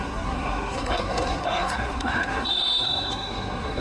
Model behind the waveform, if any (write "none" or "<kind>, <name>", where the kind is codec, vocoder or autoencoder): codec, SNAC